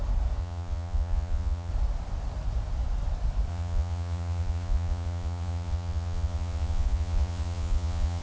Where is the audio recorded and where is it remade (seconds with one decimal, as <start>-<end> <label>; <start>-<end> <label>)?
0.0-0.4 recorded; 0.4-1.7 remade; 1.7-3.5 recorded; 3.5-8.2 remade